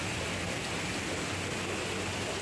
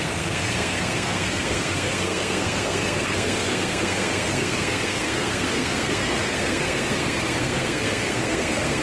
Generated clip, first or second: second